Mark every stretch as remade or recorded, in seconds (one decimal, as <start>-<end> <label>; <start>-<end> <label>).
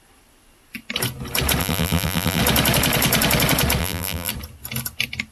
0.0-1.6 recorded; 1.6-2.4 remade; 2.4-3.8 recorded; 3.8-4.3 remade; 4.3-5.3 recorded